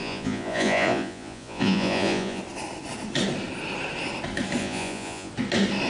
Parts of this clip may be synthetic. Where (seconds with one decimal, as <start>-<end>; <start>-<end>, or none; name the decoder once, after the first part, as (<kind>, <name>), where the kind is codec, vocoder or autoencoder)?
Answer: 0.0-2.4 (vocoder, Vocos); 4.6-5.3